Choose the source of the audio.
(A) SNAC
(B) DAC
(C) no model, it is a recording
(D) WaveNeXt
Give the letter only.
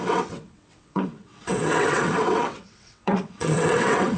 D